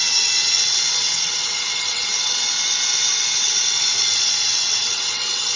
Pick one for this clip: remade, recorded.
remade